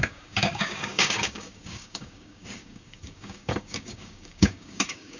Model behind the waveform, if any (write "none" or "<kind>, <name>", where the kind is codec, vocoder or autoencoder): codec, DAC